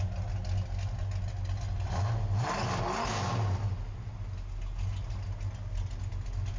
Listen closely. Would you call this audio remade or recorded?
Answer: recorded